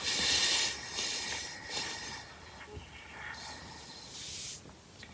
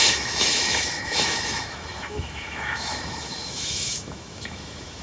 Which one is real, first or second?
first